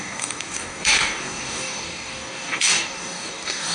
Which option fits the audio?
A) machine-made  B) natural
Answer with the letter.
A